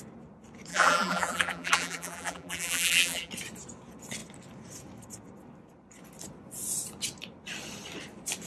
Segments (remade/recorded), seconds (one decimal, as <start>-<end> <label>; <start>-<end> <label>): 0.0-0.7 recorded; 0.7-3.3 remade; 3.3-8.5 recorded